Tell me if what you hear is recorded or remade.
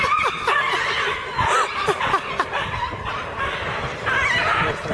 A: recorded